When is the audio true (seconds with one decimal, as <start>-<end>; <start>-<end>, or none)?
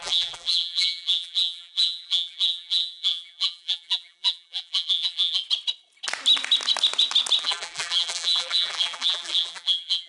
5.4-7.4